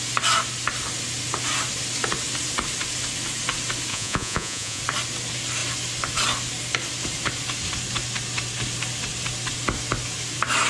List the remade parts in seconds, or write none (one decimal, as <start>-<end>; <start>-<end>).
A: 3.9-4.8

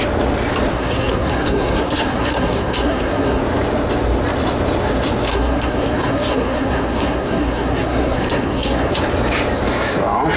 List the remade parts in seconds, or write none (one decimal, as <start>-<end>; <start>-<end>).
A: 0.7-3.4; 5.3-8.9

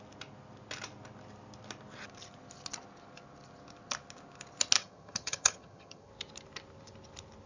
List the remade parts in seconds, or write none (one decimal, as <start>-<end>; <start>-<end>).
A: 4.8-6.1

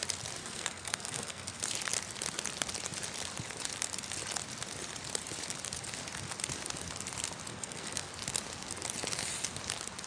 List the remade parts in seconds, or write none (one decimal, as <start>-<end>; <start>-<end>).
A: 0.4-1.6; 7.5-8.1

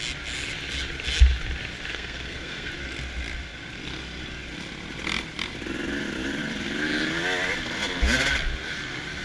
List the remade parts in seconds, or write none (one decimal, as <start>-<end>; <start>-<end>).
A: 1.9-2.7

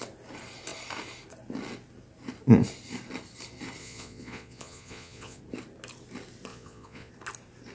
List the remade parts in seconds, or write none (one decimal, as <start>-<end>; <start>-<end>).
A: 3.8-5.4; 6.5-7.1

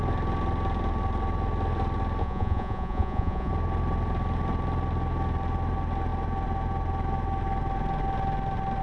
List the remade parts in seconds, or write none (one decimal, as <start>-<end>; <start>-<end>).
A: 2.2-3.5